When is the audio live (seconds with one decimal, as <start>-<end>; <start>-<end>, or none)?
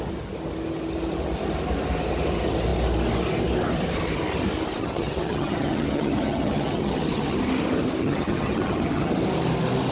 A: 0.0-4.8; 7.4-8.0; 9.1-9.9